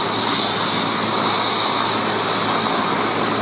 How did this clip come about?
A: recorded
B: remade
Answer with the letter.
A